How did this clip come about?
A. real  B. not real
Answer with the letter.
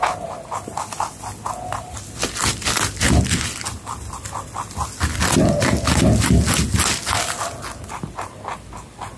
A